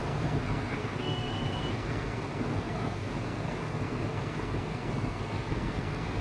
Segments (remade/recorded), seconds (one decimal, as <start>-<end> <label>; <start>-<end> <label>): 0.0-6.2 remade